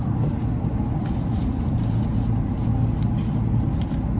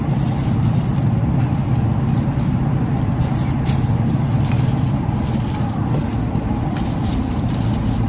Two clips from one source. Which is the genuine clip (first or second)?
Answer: first